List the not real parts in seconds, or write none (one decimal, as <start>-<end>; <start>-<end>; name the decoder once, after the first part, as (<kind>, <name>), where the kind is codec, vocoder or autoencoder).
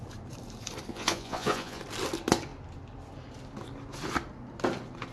0.9-1.8 (vocoder, Vocos)